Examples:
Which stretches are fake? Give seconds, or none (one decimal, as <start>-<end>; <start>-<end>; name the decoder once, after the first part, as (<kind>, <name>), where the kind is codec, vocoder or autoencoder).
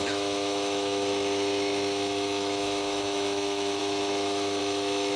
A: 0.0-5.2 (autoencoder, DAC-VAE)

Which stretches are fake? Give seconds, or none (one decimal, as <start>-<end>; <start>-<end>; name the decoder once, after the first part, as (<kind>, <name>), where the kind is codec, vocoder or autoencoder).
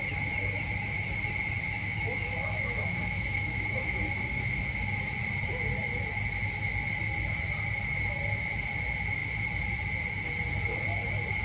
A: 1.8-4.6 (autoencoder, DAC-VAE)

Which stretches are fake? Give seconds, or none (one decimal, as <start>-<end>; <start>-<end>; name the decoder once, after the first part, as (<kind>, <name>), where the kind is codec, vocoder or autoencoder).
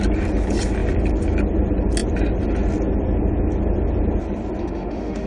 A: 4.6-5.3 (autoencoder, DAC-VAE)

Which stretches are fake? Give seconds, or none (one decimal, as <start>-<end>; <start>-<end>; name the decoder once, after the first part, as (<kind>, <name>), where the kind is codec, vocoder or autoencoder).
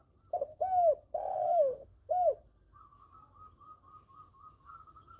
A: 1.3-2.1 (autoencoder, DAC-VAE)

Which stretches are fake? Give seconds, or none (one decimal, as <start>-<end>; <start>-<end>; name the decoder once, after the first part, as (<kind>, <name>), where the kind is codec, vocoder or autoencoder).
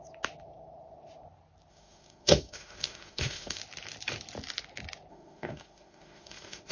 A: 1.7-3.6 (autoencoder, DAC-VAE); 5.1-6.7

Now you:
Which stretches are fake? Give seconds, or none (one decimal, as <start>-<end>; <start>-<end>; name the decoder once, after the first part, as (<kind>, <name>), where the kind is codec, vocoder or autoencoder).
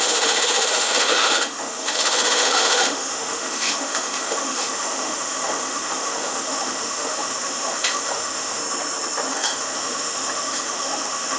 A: 0.0-8.6 (autoencoder, DAC-VAE); 9.3-11.4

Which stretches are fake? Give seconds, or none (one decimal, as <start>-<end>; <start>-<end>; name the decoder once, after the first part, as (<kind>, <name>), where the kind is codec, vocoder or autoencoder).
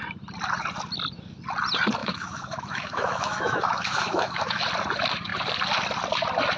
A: 2.0-4.6 (autoencoder, DAC-VAE)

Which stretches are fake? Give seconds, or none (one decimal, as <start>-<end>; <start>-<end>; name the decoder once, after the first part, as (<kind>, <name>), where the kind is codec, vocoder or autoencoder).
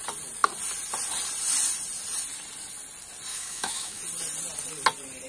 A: 3.3-4.0 (autoencoder, DAC-VAE)